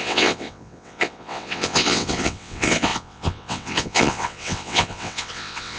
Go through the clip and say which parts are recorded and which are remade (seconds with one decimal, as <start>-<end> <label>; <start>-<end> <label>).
0.0-5.8 remade